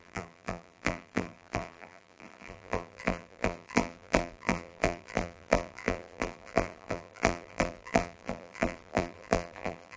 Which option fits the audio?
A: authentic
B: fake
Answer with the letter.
B